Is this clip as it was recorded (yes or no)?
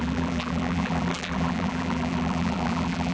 no